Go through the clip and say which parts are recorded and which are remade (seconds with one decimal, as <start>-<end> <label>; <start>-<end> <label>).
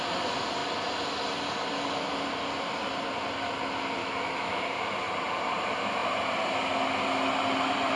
0.0-4.0 recorded; 4.0-4.7 remade; 4.7-8.0 recorded